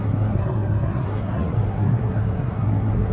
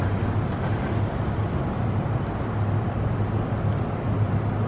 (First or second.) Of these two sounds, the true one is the second